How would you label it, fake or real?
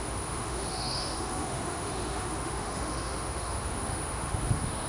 fake